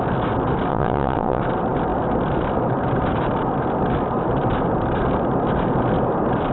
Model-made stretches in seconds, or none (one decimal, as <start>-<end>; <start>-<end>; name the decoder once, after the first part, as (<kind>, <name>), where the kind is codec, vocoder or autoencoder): 0.7-1.4 (vocoder, Vocos)